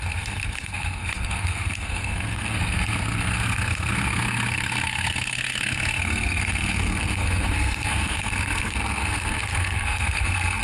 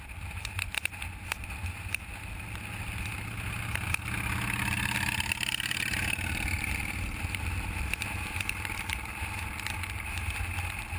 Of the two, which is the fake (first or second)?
first